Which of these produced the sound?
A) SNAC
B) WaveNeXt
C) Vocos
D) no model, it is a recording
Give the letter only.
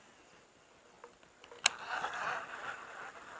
D